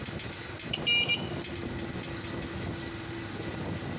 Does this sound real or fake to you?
real